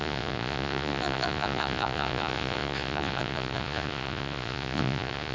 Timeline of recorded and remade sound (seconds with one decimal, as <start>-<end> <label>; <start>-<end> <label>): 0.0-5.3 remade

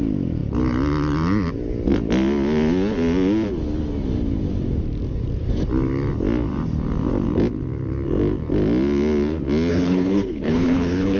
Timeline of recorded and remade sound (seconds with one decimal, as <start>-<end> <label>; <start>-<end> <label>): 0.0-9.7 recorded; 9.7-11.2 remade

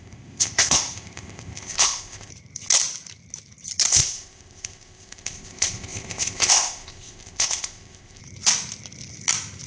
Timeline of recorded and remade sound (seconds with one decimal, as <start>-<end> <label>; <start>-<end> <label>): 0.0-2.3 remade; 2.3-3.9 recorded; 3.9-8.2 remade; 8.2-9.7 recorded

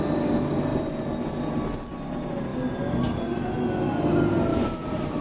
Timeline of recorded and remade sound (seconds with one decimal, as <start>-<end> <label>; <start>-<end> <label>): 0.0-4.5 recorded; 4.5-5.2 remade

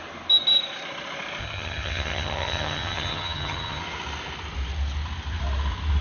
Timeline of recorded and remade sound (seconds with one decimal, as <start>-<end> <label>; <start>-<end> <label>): 0.0-1.4 recorded; 1.4-3.8 remade; 3.8-6.0 recorded

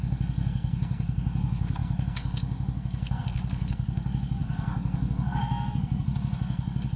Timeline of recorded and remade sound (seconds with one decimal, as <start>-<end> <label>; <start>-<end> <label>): 0.0-7.0 remade

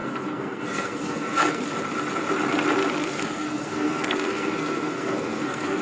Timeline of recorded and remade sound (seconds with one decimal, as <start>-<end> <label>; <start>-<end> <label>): 0.0-1.6 remade; 1.6-3.0 recorded; 3.0-5.8 remade

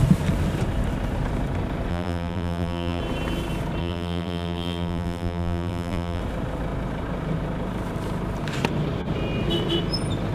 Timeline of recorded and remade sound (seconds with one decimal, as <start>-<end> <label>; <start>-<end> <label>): 0.0-1.9 recorded; 1.9-3.0 remade; 3.0-3.8 recorded; 3.8-6.2 remade; 6.2-10.3 recorded